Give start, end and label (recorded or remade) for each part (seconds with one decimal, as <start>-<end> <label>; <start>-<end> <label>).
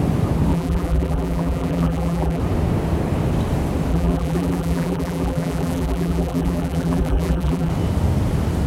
0.0-0.5 recorded; 0.5-2.4 remade; 2.4-3.9 recorded; 3.9-7.7 remade; 7.7-8.7 recorded